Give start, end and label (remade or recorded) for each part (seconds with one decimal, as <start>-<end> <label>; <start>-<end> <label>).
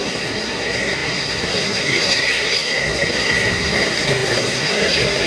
0.0-5.3 remade